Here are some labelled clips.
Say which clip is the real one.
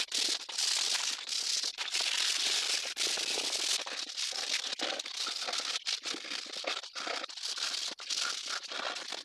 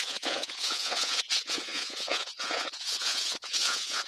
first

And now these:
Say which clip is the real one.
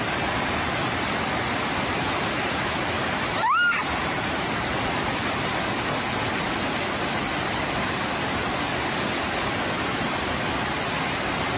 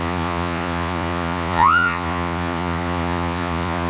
first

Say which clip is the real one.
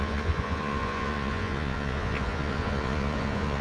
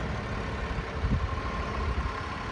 second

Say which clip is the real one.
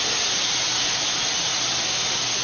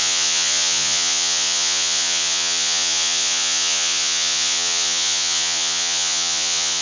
first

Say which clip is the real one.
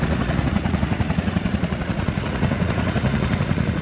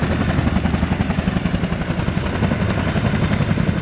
second